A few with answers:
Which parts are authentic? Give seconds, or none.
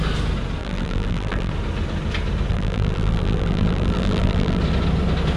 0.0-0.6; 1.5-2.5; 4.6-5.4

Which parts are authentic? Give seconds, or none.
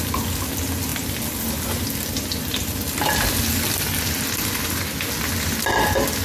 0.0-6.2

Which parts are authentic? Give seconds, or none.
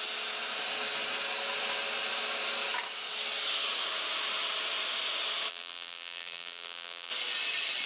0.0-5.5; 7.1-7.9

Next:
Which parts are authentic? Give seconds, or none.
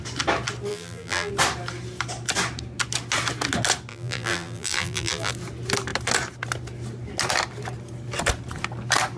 0.0-0.7; 1.3-3.9; 5.3-9.2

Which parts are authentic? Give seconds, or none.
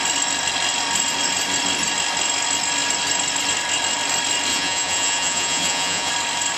0.0-4.5; 6.1-6.6